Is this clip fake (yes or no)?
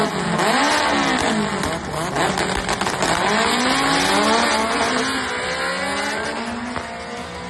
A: no